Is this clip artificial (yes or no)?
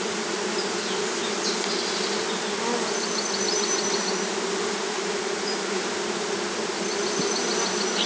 no